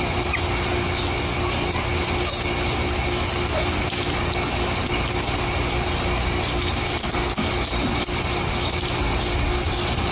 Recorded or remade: recorded